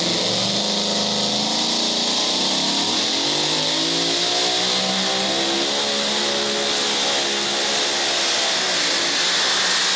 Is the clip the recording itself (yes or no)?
yes